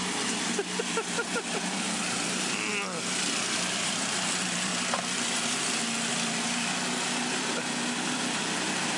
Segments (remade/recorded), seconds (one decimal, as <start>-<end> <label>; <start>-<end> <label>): 0.0-0.8 recorded; 0.8-2.7 remade; 2.7-3.4 recorded; 3.4-4.7 remade; 4.7-6.1 recorded; 6.1-9.0 remade